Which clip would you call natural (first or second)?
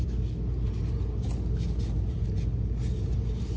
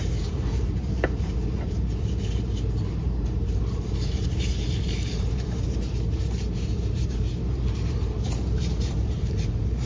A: first